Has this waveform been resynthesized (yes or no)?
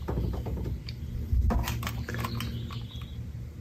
no